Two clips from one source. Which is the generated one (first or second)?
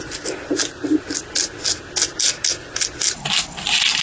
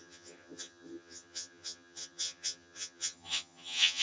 second